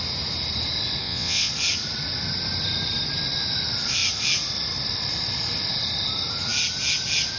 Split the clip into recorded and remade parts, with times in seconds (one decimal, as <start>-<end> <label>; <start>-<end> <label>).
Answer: 0.0-1.0 recorded; 1.0-1.5 remade; 1.5-7.4 recorded